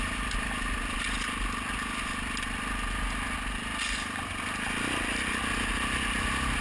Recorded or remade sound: recorded